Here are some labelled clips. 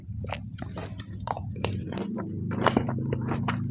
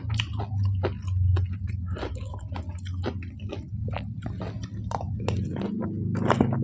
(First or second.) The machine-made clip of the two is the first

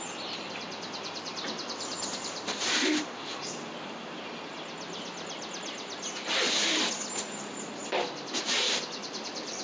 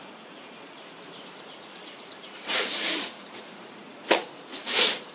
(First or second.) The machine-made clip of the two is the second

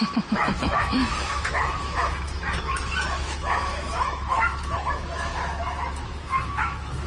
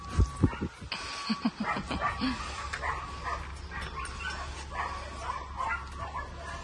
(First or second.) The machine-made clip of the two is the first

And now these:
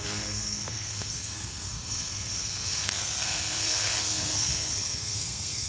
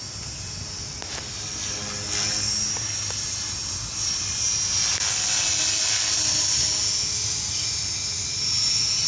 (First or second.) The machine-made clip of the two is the first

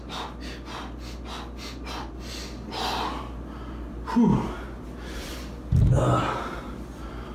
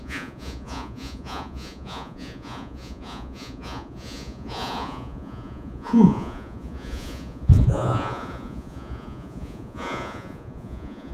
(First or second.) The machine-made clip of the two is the second